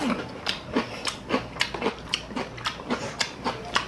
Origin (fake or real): real